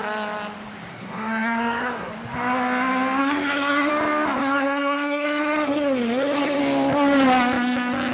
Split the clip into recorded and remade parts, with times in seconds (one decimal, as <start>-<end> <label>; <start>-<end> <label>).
0.0-0.9 recorded; 0.9-2.1 remade; 2.1-3.2 recorded; 3.2-3.9 remade; 3.9-4.4 recorded; 4.4-6.6 remade; 6.6-8.1 recorded